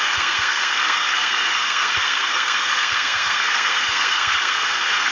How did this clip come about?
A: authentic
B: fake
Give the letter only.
B